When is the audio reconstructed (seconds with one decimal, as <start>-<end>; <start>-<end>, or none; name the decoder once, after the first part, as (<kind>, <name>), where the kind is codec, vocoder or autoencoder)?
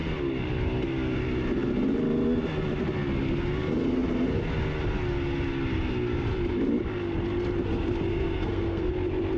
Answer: 8.1-8.9 (codec, SNAC)